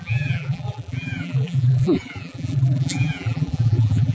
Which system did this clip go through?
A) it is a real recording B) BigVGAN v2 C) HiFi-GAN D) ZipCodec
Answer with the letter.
B